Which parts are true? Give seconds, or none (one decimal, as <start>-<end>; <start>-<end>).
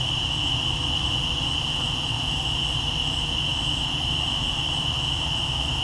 0.0-5.8